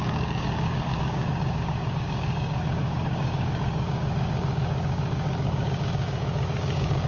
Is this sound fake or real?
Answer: fake